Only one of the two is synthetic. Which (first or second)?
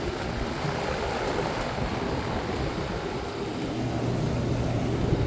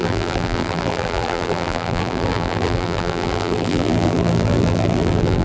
second